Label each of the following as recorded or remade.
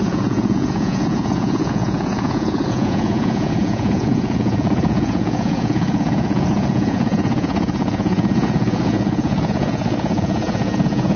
remade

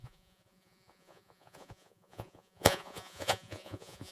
remade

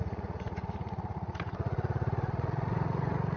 remade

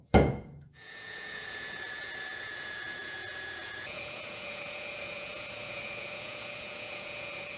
remade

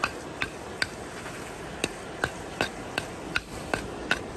recorded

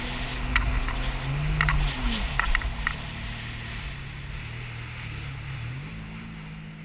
recorded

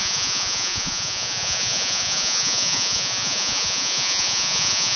remade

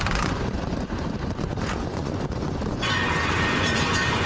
remade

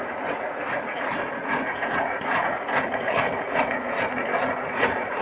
remade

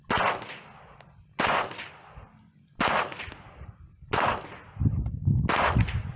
recorded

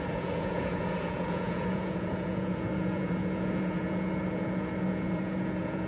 remade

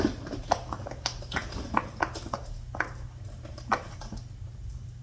recorded